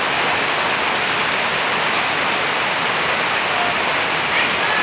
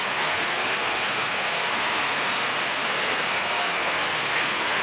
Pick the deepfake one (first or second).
second